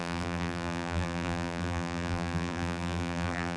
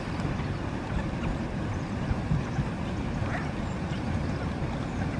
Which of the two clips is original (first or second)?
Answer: second